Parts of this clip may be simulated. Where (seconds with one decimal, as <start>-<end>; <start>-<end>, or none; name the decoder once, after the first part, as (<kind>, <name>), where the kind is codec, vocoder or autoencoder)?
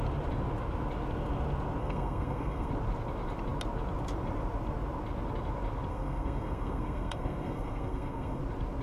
1.8-2.7 (codec, SNAC); 5.9-8.4